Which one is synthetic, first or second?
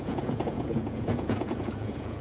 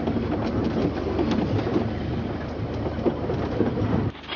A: first